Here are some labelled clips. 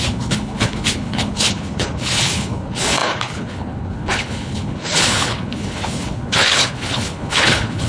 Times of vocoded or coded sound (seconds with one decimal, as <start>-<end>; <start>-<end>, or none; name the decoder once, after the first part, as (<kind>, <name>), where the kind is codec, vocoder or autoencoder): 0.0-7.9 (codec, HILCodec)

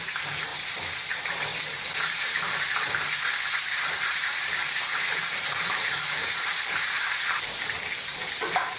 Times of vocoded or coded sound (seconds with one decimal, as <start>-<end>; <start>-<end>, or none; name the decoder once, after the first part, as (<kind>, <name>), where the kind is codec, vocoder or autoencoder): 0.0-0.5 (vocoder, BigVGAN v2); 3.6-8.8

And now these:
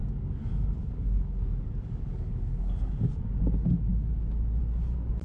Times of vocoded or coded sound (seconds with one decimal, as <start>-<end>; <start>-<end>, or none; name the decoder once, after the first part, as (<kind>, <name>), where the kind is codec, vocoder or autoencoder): 0.0-3.1 (codec, DAC)